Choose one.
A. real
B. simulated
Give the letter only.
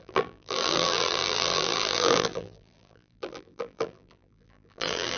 B